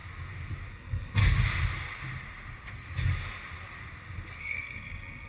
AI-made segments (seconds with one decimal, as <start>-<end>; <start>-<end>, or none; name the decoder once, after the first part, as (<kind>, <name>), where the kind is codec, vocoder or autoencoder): 0.7-1.2 (codec, SNAC); 4.4-5.3